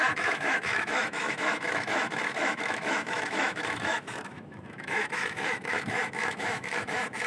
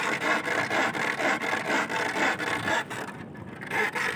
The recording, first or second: second